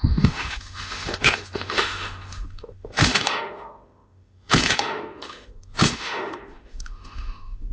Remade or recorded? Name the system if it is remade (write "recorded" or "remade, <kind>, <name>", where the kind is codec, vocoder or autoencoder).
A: remade, autoencoder, DAC-VAE